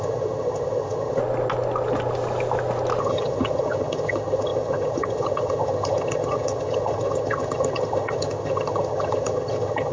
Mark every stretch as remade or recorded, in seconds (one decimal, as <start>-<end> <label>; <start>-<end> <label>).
0.0-1.2 remade; 1.2-3.0 recorded; 3.0-9.9 remade